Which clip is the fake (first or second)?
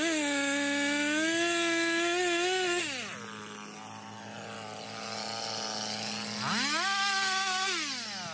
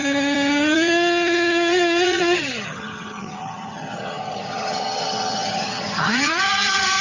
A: second